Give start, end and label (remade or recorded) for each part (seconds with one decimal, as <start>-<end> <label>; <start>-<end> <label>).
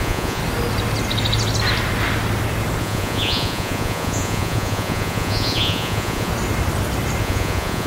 0.0-0.4 remade; 0.4-2.8 recorded; 2.8-6.3 remade; 6.3-7.2 recorded; 7.2-7.9 remade